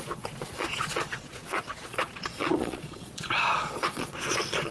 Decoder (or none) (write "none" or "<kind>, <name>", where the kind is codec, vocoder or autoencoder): vocoder, Vocos